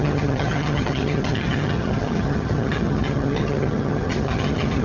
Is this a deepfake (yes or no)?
yes